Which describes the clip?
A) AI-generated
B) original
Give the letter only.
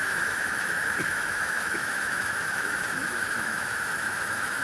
A